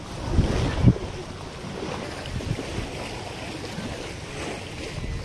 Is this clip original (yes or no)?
yes